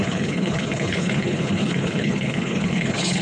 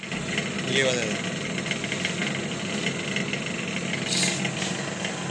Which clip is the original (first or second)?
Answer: second